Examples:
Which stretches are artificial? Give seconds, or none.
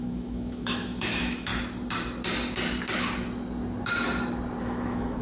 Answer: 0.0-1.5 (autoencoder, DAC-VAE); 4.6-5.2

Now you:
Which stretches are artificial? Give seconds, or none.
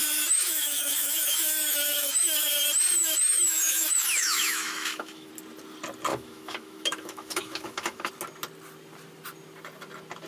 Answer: 0.0-2.6 (autoencoder, DAC-VAE); 3.0-5.3; 6.1-8.1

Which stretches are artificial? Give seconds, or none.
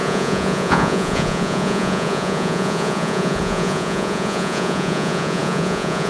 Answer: 0.0-6.1 (vocoder, Vocos)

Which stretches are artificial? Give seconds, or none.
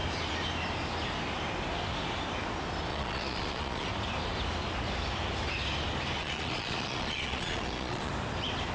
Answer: 2.9-3.9 (vocoder, Vocos); 6.2-8.1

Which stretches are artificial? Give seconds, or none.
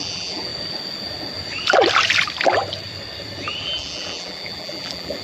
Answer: 0.0-0.5 (vocoder, BigVGAN v2); 3.6-5.2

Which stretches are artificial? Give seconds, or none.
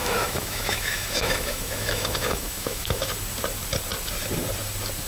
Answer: 0.0-3.1 (autoencoder, DAC-VAE)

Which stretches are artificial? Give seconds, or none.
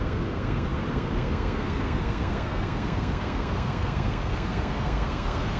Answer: 0.0-5.6 (codec, SNAC)